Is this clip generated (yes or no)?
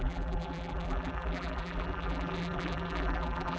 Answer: yes